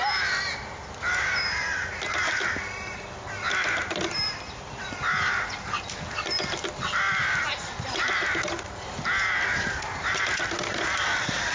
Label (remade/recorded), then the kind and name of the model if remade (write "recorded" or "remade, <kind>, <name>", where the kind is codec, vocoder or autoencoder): recorded